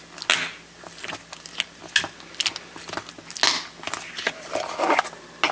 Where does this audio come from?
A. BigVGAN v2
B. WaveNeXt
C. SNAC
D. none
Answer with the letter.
D